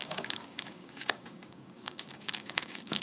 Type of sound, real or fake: fake